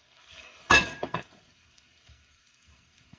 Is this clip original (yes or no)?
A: no